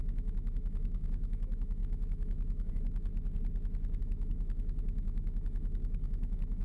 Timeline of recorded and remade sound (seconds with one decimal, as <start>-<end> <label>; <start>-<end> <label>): 0.0-3.1 remade; 3.1-4.0 recorded; 4.0-6.6 remade